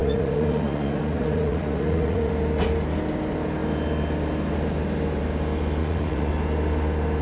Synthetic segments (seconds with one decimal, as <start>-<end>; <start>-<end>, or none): 0.0-2.3; 5.8-6.3